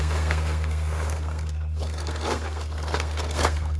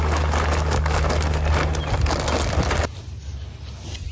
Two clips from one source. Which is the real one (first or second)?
second